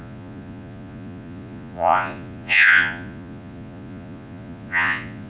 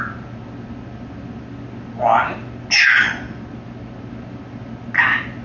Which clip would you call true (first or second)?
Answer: second